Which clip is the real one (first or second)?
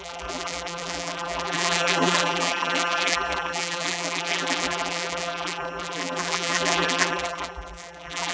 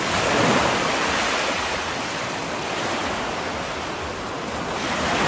second